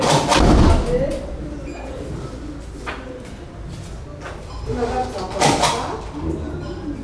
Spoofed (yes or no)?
no